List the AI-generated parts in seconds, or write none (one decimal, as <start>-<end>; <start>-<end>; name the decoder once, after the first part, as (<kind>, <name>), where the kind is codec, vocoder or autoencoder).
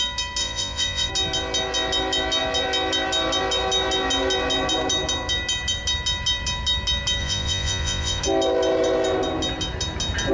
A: 0.4-1.1 (vocoder, Vocos); 7.2-8.2